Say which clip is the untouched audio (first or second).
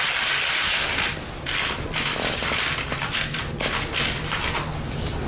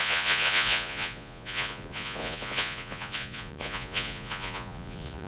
first